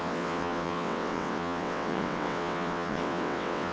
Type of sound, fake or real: fake